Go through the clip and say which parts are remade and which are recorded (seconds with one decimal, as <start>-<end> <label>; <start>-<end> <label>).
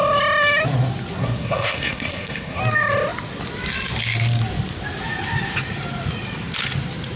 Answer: 0.0-1.2 recorded; 1.2-2.6 remade; 2.6-7.2 recorded